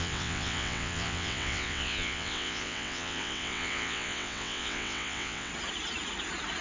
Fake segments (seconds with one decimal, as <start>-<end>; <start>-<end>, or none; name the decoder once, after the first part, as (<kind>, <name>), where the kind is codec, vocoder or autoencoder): 0.0-5.5 (vocoder, WaveNeXt)